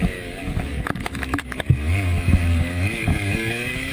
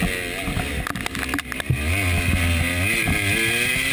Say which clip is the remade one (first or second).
first